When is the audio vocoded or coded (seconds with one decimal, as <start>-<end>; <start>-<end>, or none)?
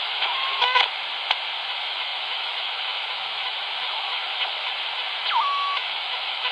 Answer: 0.0-0.8; 1.7-4.7; 5.4-6.5